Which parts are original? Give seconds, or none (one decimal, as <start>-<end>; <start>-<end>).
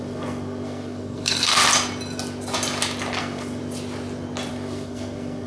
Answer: 1.6-3.2; 3.6-4.5